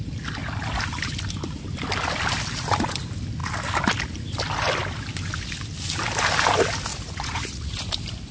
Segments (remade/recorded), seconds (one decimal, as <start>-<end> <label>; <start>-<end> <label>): 0.0-6.9 recorded; 6.9-7.9 remade; 7.9-8.3 recorded